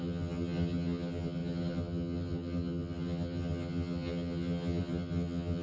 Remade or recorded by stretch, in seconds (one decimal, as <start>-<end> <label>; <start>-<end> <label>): 0.0-5.6 remade